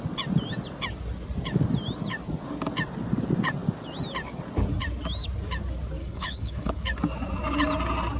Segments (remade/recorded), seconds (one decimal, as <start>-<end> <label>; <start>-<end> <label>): 0.0-6.0 recorded; 6.0-6.8 remade; 6.8-8.2 recorded